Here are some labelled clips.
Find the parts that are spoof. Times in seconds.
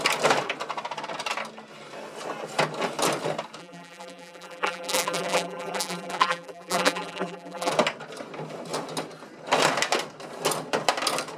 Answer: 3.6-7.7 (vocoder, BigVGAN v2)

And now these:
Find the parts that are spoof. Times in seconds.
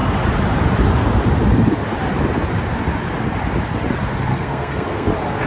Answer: 4.3-5.1 (codec, SNAC)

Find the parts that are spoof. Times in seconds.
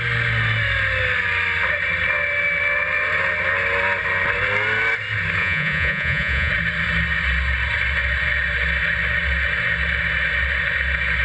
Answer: 5.4-6.5 (vocoder, Vocos)